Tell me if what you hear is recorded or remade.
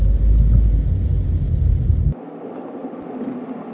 recorded